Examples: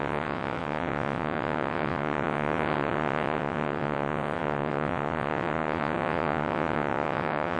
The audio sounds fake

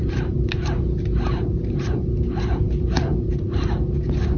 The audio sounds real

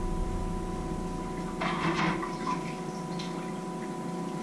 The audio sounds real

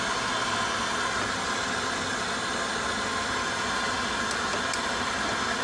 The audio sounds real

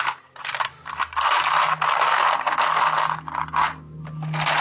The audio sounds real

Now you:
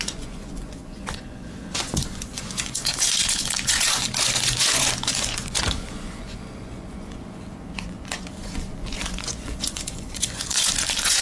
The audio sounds fake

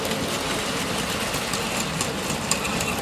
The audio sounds real